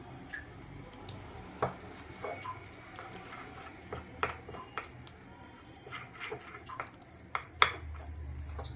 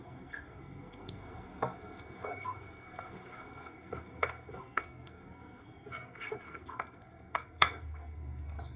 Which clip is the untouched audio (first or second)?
first